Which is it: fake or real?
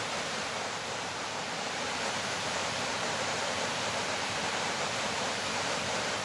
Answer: fake